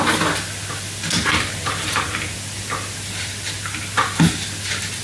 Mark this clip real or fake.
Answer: real